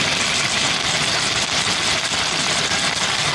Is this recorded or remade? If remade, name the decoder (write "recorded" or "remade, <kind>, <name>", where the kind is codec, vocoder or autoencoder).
recorded